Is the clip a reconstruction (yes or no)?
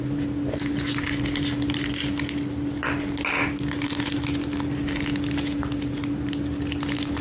no